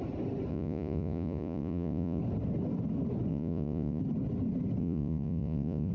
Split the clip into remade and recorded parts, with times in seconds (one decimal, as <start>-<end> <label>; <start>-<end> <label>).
0.0-0.5 recorded; 0.5-2.2 remade; 2.2-3.3 recorded; 3.3-4.0 remade; 4.0-4.8 recorded; 4.8-5.9 remade